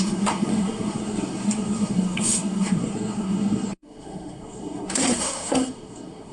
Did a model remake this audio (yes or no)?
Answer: yes